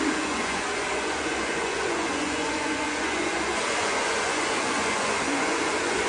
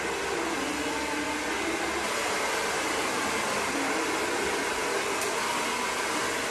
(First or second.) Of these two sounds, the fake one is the first